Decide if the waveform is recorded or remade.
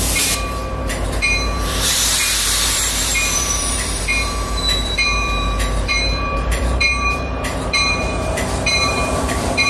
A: remade